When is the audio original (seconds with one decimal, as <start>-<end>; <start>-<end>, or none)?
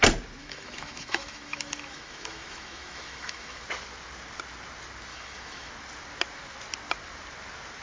0.0-0.4; 3.6-5.1; 5.7-7.8